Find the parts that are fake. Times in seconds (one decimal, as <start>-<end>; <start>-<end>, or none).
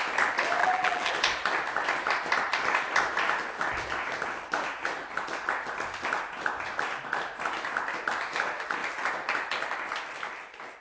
0.6-1.1